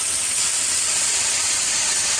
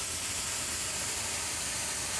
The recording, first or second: second